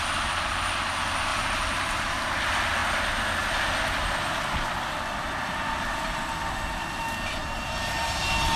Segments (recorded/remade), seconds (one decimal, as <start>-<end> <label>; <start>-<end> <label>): 0.0-1.3 recorded; 1.3-2.4 remade; 2.4-7.4 recorded; 7.4-8.2 remade; 8.2-8.6 recorded